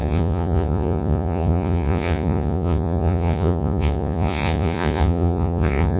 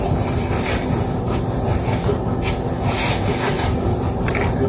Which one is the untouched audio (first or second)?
second